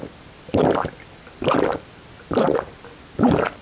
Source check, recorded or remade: recorded